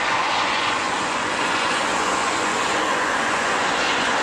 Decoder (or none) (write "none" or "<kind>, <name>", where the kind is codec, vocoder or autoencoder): vocoder, Vocos